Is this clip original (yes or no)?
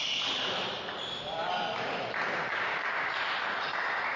yes